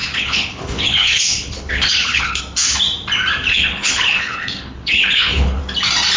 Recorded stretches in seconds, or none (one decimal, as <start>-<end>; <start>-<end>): 2.4-3.5; 5.6-6.2